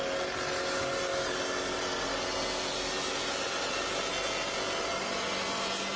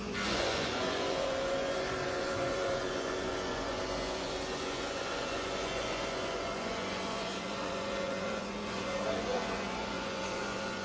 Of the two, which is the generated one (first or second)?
second